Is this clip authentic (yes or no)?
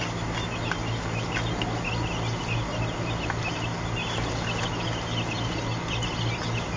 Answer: yes